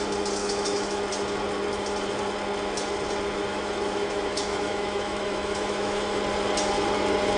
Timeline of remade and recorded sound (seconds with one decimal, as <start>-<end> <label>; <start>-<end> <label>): 0.0-0.4 recorded; 0.4-1.0 remade; 1.0-3.5 recorded; 3.5-6.2 remade; 6.2-7.4 recorded